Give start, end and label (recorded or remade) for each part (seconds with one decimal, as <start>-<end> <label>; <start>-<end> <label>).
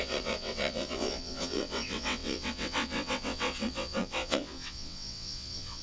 0.0-5.8 remade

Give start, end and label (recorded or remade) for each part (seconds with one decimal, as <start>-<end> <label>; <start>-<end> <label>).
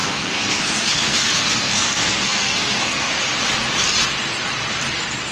0.0-3.2 remade; 3.2-5.3 recorded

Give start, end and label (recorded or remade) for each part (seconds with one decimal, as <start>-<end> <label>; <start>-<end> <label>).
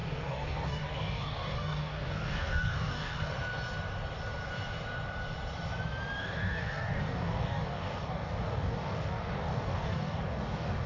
0.0-3.3 remade; 3.3-6.2 recorded; 6.2-10.9 remade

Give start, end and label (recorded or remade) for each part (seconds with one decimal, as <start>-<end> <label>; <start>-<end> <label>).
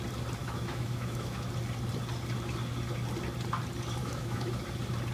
0.0-0.4 recorded; 0.4-1.5 remade; 1.5-4.0 recorded; 4.0-4.6 remade; 4.6-5.1 recorded